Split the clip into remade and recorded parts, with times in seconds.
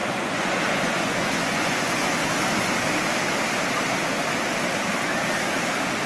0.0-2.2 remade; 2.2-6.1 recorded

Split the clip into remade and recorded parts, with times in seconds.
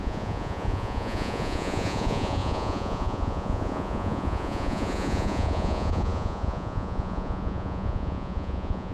0.0-8.9 remade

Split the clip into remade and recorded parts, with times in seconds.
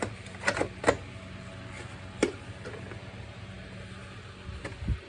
0.0-5.1 recorded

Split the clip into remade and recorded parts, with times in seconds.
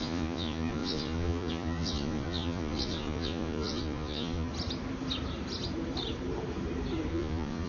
0.0-4.5 remade; 4.5-7.1 recorded; 7.1-7.7 remade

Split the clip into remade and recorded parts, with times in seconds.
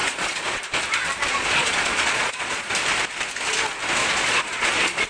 0.0-0.6 remade; 0.6-1.3 recorded; 1.3-2.7 remade; 2.7-4.0 recorded; 4.0-5.1 remade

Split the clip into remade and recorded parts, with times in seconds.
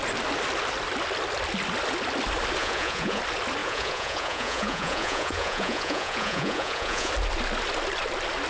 0.0-2.6 recorded; 2.6-3.2 remade; 3.2-3.6 recorded; 3.6-7.1 remade; 7.1-8.5 recorded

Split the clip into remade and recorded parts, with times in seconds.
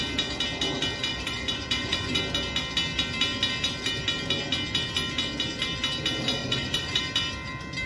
0.0-1.1 recorded; 1.1-2.2 remade; 2.2-6.4 recorded; 6.4-7.0 remade; 7.0-7.9 recorded